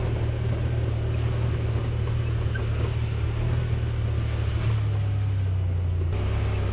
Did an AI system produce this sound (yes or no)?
no